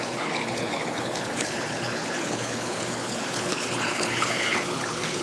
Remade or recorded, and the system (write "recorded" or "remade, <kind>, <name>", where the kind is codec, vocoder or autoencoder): remade, codec, HILCodec